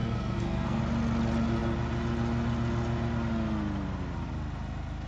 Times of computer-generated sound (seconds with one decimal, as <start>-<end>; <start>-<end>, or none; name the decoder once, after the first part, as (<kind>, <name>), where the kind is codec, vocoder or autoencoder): 0.0-0.8 (codec, SNAC)